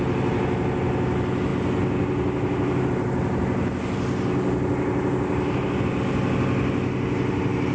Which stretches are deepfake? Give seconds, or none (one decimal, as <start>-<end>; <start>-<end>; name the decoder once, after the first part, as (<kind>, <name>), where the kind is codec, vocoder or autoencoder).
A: none